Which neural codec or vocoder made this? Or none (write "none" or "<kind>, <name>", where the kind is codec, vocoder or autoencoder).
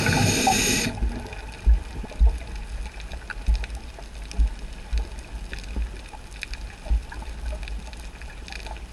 none